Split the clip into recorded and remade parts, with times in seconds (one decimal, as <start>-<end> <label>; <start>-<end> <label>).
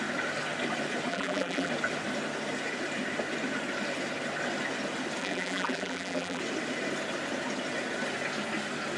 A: 0.0-1.1 recorded; 1.1-1.7 remade; 1.7-5.2 recorded; 5.2-6.4 remade; 6.4-9.0 recorded